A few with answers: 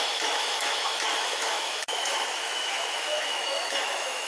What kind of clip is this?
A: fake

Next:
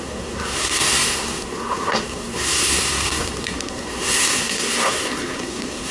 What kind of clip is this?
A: fake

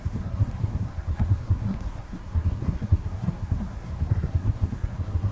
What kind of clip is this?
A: fake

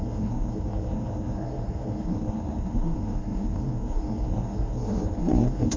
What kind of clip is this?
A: fake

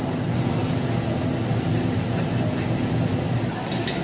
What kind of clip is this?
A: real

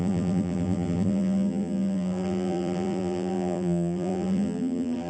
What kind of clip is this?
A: fake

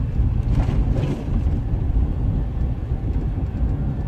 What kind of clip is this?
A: real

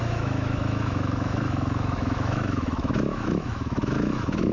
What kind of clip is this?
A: fake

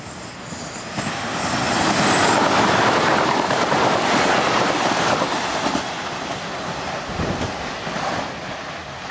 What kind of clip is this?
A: real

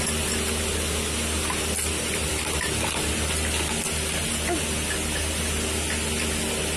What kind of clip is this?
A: real